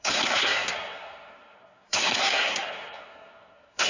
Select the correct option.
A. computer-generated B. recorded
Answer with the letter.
A